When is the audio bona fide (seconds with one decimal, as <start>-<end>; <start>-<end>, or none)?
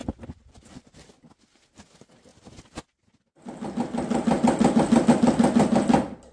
0.0-6.3